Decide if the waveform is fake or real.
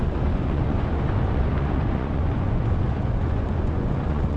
fake